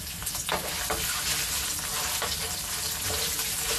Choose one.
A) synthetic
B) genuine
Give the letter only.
B